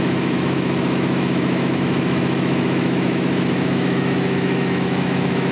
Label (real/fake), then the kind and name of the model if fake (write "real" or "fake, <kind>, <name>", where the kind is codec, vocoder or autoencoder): fake, autoencoder, DAC-VAE